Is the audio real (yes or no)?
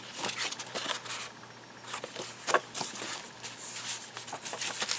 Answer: yes